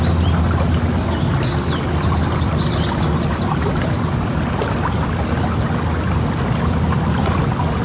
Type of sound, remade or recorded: recorded